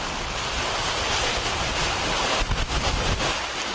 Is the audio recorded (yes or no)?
yes